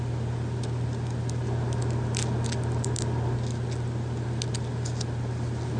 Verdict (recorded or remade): recorded